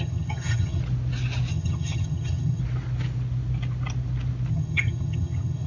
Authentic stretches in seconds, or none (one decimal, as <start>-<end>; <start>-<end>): 0.8-1.5; 2.6-4.5